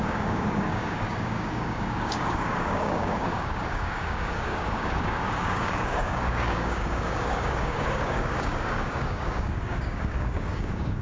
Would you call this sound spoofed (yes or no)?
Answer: yes